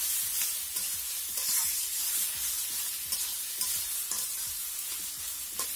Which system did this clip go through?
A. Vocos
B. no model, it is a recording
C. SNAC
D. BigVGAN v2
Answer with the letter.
B